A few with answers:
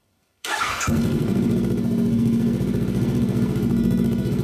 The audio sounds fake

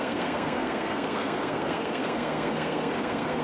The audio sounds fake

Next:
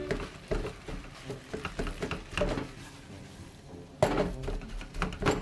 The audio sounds real